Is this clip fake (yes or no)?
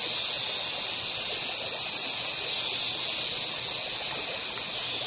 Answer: no